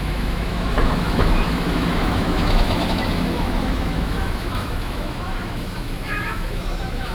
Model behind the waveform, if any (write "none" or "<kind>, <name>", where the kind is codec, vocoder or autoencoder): autoencoder, DAC-VAE